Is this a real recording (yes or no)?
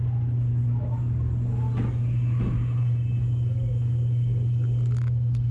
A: yes